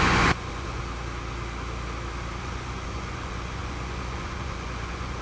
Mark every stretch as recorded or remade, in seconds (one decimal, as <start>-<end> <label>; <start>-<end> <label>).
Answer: 0.0-0.8 remade; 0.8-2.4 recorded; 2.4-5.2 remade